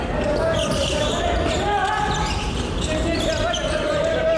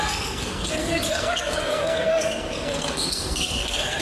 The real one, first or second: first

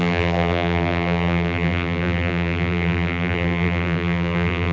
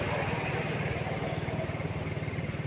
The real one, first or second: second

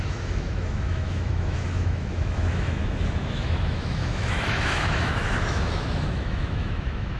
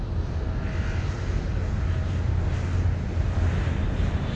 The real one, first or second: second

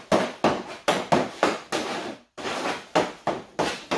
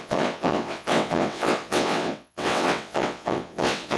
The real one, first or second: first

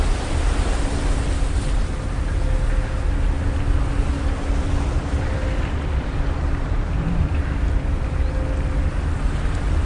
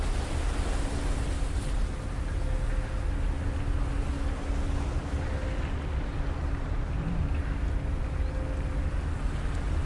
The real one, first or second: second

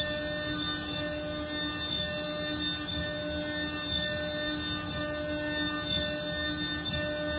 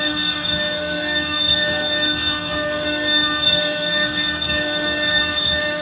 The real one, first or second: first